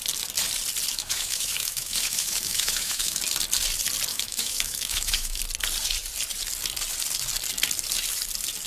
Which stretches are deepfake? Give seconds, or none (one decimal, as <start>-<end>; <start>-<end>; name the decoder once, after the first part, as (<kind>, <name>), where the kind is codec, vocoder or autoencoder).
0.9-3.2 (autoencoder, DAC-VAE); 4.1-5.4